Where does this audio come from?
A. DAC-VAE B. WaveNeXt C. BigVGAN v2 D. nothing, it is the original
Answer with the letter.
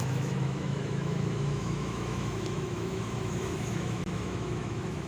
A